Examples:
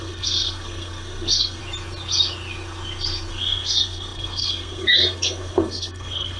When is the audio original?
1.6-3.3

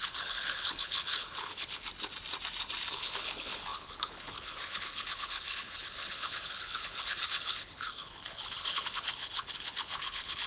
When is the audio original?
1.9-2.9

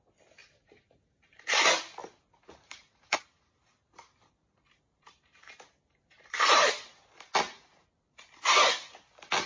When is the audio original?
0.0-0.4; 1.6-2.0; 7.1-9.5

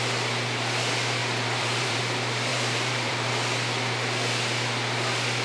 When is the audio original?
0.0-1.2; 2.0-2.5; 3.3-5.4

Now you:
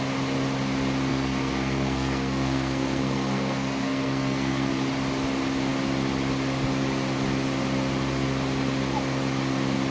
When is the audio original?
0.0-1.1; 4.7-9.9

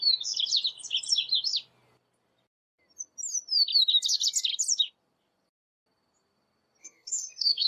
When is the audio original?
0.0-6.8

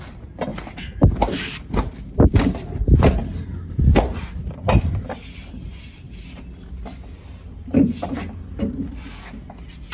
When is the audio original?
0.0-0.5; 3.1-9.9

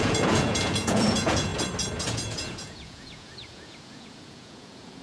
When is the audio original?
1.5-2.1